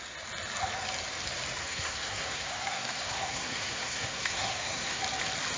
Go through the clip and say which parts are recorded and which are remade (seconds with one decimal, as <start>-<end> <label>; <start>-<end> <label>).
0.0-1.6 recorded; 1.6-5.0 remade; 5.0-5.6 recorded